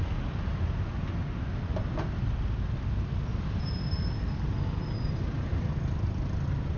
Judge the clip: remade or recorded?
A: recorded